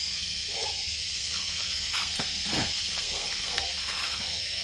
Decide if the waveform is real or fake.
fake